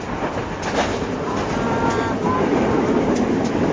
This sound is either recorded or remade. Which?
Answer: recorded